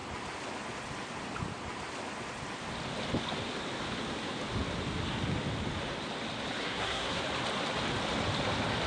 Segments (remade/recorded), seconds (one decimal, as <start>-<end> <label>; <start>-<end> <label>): 0.0-6.6 recorded; 6.6-7.2 remade; 7.2-8.9 recorded